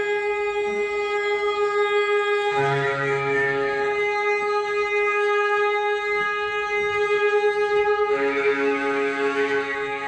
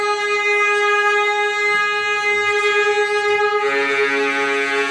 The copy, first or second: first